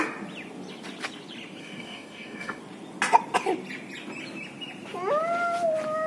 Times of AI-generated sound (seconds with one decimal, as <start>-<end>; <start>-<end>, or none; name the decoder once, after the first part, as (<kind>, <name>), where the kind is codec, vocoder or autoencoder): 1.6-2.6 (codec, DAC)